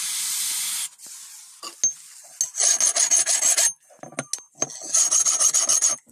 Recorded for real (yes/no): yes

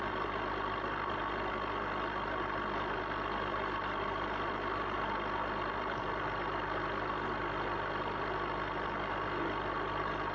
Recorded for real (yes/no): yes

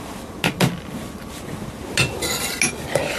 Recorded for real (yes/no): yes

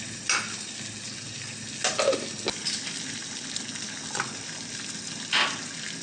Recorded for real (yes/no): yes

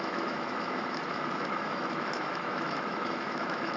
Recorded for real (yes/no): no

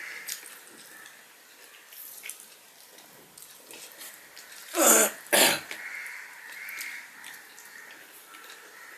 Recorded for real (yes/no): no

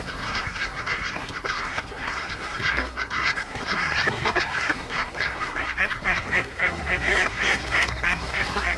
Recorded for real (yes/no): no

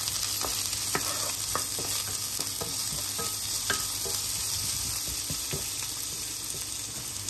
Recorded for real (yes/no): yes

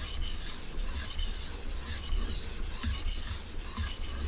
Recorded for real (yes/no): yes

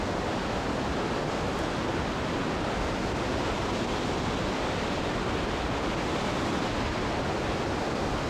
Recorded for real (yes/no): yes